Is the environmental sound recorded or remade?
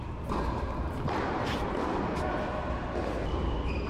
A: recorded